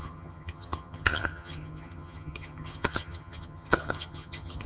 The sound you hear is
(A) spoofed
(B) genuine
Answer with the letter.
A